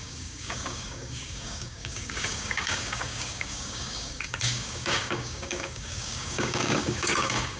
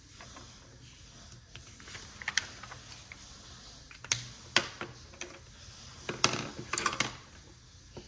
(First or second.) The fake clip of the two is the first